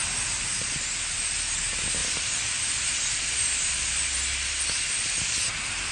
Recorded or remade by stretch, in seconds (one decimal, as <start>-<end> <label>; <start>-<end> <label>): 0.0-2.0 recorded; 2.0-5.5 remade; 5.5-5.9 recorded